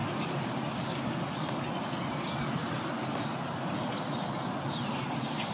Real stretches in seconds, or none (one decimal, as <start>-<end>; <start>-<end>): 0.0-5.5